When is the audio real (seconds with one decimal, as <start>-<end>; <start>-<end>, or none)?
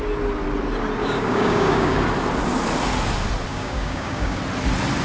0.0-1.0; 2.0-3.5; 4.4-5.0